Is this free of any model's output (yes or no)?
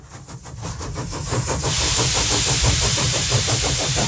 no